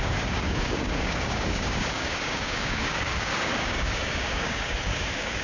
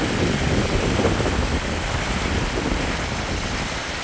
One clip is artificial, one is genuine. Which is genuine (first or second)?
second